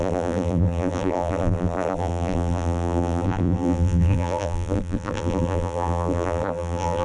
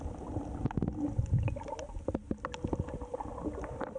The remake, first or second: first